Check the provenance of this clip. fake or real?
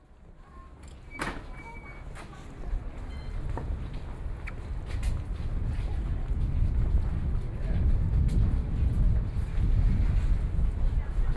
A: real